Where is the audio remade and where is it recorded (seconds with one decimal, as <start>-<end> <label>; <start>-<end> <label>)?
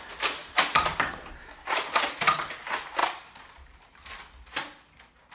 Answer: 0.0-0.4 recorded; 0.4-1.1 remade; 1.1-3.0 recorded; 3.0-4.2 remade; 4.2-5.3 recorded